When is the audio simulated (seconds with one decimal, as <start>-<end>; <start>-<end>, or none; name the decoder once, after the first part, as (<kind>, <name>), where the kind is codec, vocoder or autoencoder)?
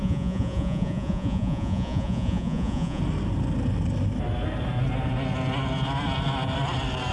0.0-3.0 (vocoder, Vocos)